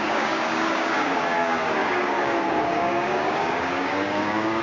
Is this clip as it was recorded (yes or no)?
no